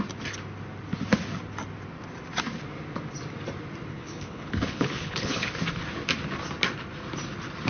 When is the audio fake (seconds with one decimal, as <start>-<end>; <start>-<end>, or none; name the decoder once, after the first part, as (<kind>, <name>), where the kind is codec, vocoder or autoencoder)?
3.9-5.5 (codec, HILCodec)